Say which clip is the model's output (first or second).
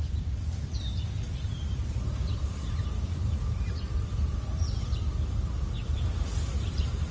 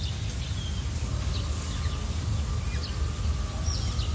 first